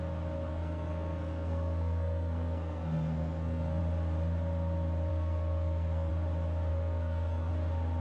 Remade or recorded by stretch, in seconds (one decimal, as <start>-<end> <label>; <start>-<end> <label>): 0.0-0.5 recorded; 0.5-3.8 remade; 3.8-5.1 recorded; 5.1-6.1 remade; 6.1-6.7 recorded; 6.7-7.5 remade; 7.5-8.0 recorded